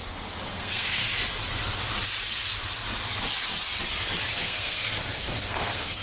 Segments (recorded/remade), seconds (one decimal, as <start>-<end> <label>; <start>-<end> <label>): 0.0-0.5 recorded; 0.5-1.0 remade; 1.0-4.4 recorded; 4.4-4.9 remade; 4.9-5.4 recorded; 5.4-6.0 remade